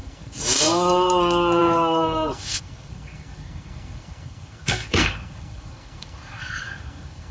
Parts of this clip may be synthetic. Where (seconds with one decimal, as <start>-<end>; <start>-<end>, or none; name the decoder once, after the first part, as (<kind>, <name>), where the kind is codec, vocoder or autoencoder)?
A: 0.0-7.3 (codec, SNAC)